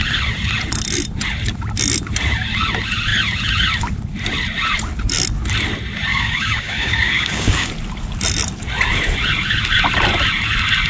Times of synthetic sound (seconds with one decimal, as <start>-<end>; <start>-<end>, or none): 6.1-7.7